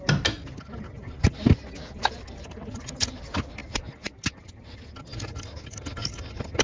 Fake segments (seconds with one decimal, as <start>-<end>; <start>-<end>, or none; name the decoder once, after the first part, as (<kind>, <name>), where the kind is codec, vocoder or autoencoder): none